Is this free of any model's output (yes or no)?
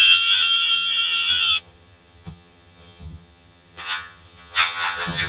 no